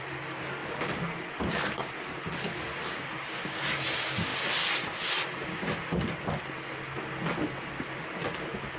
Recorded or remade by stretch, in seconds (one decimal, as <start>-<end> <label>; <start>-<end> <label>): 0.0-2.8 recorded; 2.8-3.6 remade; 3.6-8.8 recorded